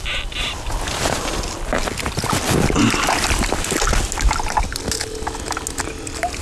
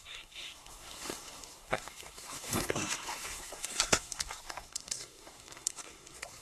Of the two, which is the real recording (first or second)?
first